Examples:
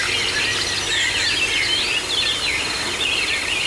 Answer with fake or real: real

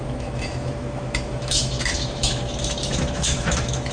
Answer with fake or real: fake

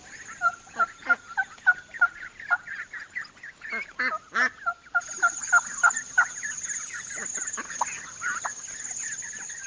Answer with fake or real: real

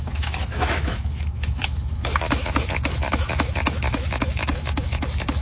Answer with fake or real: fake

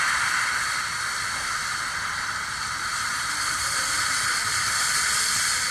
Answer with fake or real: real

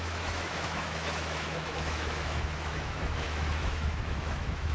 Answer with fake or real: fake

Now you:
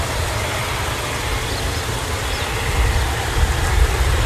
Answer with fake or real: real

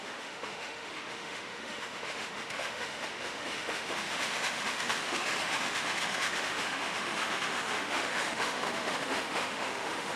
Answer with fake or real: fake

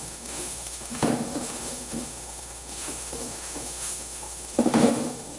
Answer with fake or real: fake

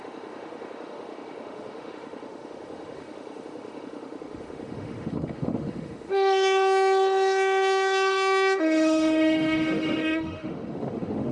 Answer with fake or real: fake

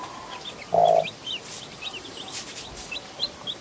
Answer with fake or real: real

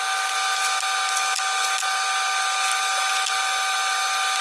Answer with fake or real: real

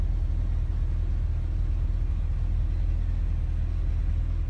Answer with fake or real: real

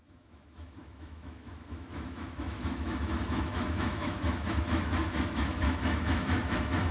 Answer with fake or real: fake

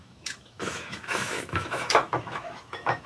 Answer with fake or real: fake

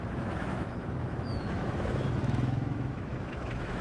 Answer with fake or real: fake